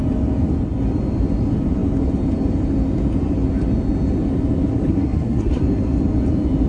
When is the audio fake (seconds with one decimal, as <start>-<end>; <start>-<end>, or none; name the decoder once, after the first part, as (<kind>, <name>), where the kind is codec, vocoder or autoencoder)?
4.9-5.6 (codec, SNAC)